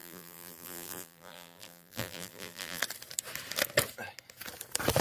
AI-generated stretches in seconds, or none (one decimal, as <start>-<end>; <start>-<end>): 0.0-2.8